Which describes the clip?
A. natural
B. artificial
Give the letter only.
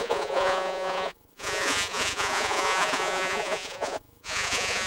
B